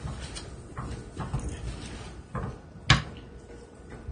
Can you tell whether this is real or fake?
real